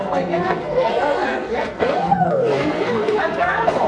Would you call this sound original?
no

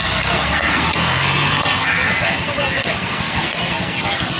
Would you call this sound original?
no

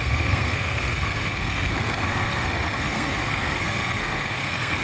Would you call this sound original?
no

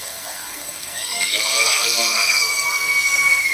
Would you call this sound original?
no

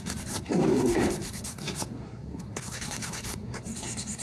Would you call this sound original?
no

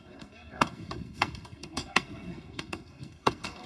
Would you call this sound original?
no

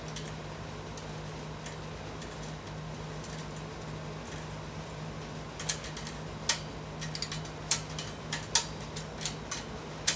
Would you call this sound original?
yes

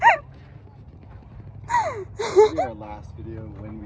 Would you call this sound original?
yes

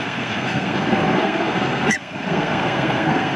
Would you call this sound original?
no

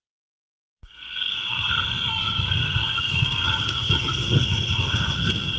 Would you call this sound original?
no